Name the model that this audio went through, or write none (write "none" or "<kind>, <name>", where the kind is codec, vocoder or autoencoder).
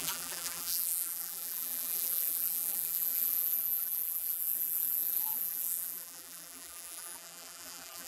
vocoder, BigVGAN v2